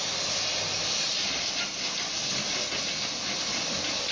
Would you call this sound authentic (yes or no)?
yes